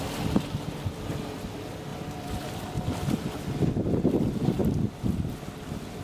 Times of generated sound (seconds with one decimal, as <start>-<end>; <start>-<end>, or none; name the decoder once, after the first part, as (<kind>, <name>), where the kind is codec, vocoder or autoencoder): 1.9-2.8 (vocoder, BigVGAN v2)